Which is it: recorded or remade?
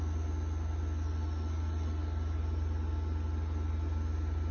recorded